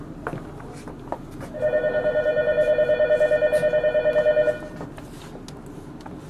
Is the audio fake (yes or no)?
no